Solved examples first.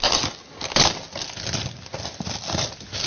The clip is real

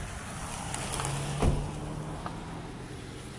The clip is real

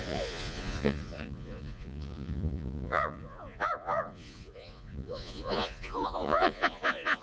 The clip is fake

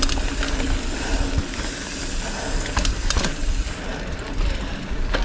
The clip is real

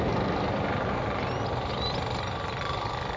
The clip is real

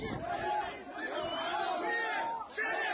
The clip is real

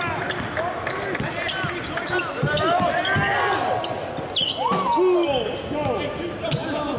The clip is real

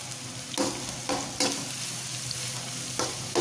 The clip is real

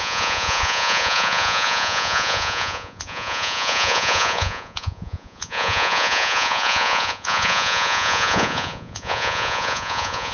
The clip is fake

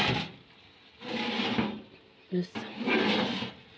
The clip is real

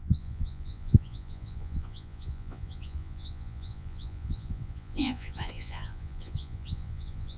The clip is fake